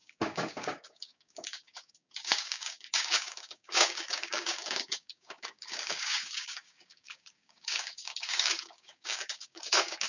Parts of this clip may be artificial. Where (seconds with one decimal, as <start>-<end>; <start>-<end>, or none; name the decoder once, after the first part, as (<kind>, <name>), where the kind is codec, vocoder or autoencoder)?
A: 0.0-10.1 (codec, DAC)